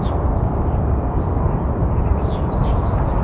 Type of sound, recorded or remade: recorded